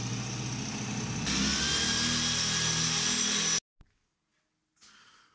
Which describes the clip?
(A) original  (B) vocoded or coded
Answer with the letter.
A